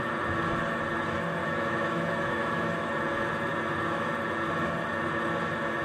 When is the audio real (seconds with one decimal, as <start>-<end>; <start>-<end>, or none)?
0.0-1.4; 2.9-5.8